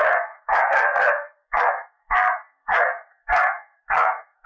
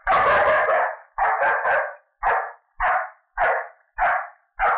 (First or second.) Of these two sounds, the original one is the second